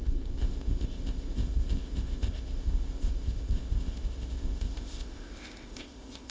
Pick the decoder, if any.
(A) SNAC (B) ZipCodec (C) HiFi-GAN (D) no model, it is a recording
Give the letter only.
B